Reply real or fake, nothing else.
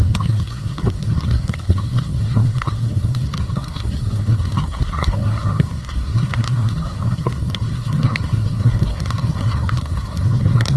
fake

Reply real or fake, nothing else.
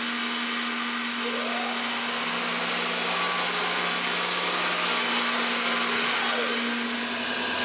real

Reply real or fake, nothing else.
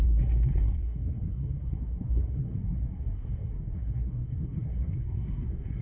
fake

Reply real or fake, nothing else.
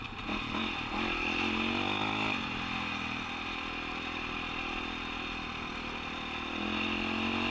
real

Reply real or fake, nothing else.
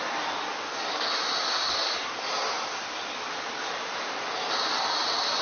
real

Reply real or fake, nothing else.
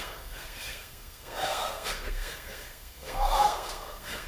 fake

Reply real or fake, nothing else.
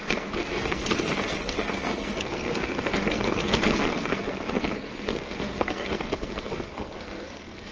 fake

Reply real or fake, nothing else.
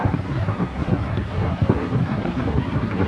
fake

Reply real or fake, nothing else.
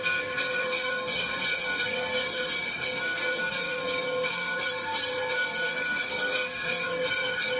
fake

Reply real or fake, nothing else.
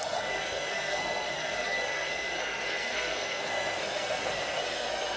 fake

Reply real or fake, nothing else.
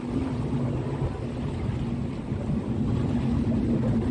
real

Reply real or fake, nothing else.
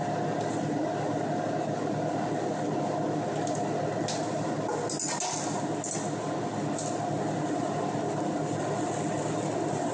real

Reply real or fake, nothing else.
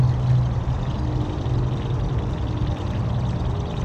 real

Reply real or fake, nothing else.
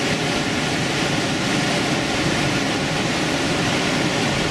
real